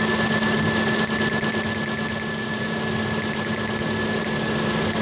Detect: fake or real real